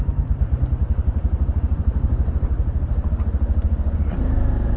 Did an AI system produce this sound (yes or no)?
yes